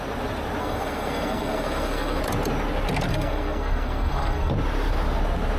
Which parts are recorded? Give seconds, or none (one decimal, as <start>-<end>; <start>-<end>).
0.0-0.6; 2.2-3.1; 4.5-5.6